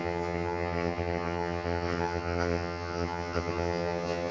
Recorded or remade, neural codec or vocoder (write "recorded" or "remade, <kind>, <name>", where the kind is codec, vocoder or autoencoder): remade, vocoder, HiFi-GAN